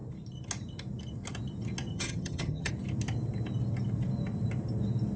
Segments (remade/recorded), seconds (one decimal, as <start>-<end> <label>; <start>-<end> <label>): 0.0-1.9 recorded; 1.9-2.7 remade; 2.7-5.2 recorded